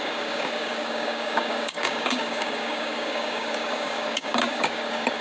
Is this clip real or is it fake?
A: fake